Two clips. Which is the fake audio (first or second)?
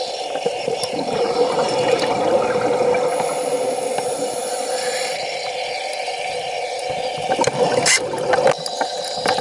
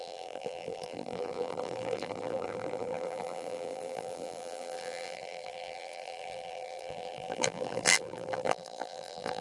second